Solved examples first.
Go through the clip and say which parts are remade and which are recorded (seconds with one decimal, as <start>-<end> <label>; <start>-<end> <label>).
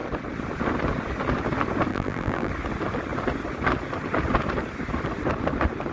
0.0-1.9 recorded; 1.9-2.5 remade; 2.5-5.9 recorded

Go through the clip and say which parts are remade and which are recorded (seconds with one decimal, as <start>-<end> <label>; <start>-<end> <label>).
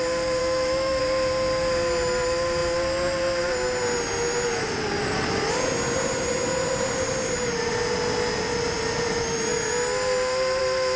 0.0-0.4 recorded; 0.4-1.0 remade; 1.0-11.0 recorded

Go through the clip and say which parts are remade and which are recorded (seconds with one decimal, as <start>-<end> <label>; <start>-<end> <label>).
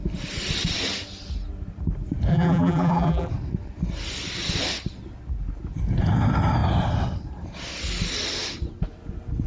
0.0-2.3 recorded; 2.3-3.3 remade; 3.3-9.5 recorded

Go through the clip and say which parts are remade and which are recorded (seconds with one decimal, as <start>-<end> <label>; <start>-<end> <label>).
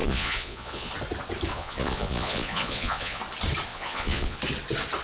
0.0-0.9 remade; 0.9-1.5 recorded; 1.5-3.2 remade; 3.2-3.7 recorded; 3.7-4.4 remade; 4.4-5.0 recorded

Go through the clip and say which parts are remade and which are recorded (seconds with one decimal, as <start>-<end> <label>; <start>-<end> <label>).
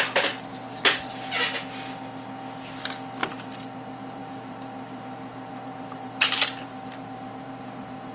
0.0-0.5 recorded; 0.5-1.1 remade; 1.1-3.2 recorded; 3.2-8.1 remade